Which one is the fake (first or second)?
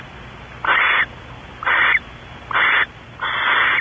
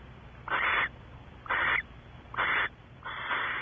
second